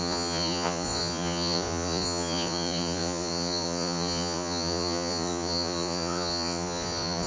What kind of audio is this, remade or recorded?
remade